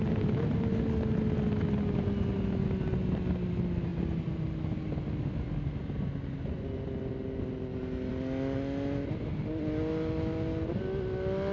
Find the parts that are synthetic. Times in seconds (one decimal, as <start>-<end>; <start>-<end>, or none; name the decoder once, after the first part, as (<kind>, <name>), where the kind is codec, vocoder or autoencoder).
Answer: none